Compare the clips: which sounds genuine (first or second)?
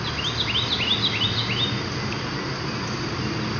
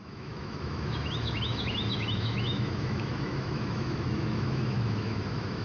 first